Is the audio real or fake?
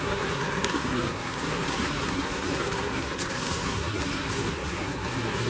fake